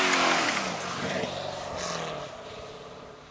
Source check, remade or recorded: recorded